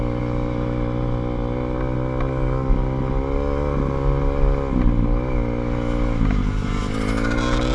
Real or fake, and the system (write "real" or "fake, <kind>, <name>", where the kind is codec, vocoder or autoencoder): real